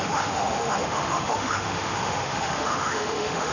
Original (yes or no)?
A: no